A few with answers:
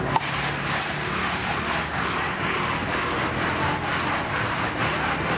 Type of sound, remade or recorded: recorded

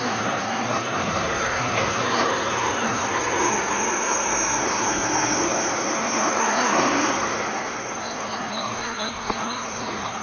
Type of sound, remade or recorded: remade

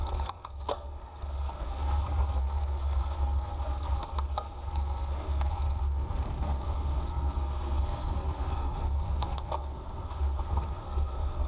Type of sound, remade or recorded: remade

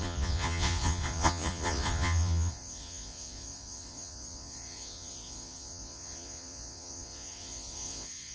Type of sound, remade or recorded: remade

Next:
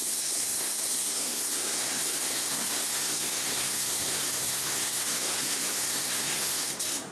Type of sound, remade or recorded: remade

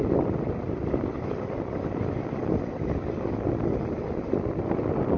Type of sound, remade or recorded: recorded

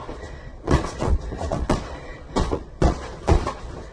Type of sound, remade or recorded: remade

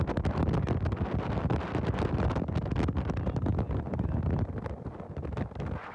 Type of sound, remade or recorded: recorded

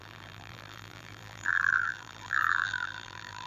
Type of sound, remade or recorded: remade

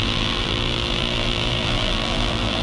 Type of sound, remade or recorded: remade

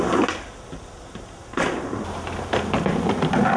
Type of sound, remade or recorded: recorded